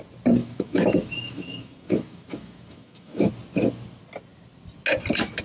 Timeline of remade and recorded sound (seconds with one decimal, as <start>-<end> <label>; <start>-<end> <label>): 0.0-0.4 recorded; 0.4-3.3 remade; 3.3-5.4 recorded